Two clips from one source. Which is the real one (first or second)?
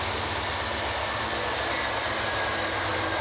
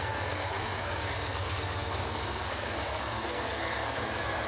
first